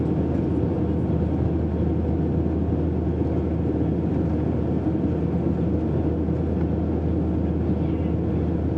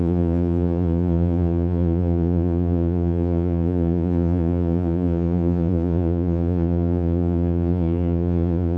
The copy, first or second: second